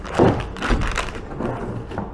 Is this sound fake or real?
real